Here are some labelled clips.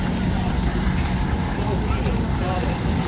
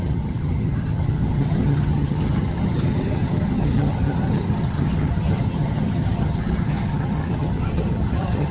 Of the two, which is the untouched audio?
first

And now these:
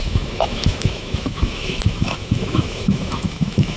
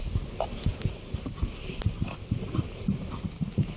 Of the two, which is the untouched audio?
second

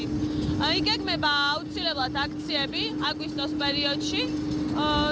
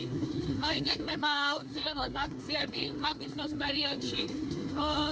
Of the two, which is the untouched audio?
first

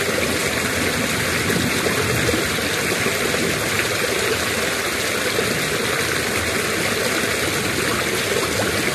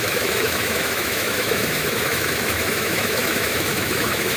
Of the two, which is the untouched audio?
first